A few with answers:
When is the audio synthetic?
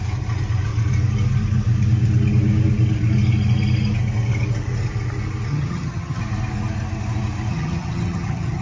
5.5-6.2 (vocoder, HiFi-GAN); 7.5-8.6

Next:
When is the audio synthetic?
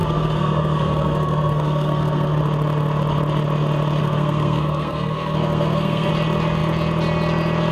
0.0-2.4 (codec, SNAC); 4.0-6.1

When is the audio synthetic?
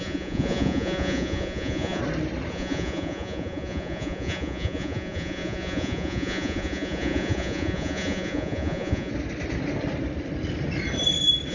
0.0-2.0 (vocoder, Vocos); 2.5-9.1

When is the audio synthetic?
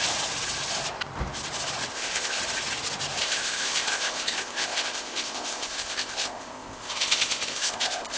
1.9-2.4 (codec, ZipCodec); 3.2-8.2